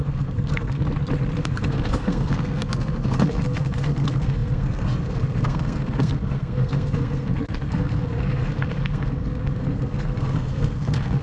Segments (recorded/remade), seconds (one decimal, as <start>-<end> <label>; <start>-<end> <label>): 0.0-0.8 remade; 0.8-1.4 recorded; 1.4-11.2 remade